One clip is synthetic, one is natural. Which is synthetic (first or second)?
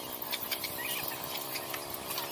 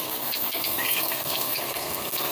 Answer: second